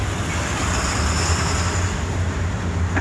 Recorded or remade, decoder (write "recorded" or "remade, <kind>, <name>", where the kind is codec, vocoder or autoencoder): recorded